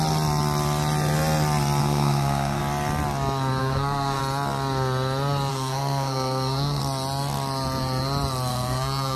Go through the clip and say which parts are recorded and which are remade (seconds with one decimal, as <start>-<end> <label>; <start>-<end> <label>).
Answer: 0.0-1.8 recorded; 1.8-2.6 remade; 2.6-3.6 recorded; 3.6-4.2 remade; 4.2-5.5 recorded; 5.5-6.8 remade; 6.8-8.5 recorded; 8.5-9.2 remade